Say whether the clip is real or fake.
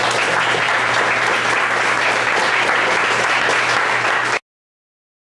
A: real